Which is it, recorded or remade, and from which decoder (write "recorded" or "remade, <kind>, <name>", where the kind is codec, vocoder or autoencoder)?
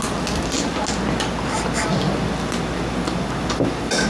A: recorded